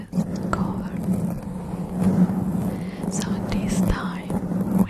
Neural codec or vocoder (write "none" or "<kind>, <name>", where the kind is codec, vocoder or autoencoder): none